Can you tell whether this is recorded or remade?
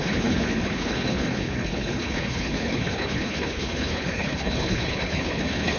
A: remade